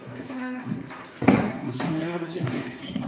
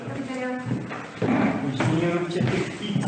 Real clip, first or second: second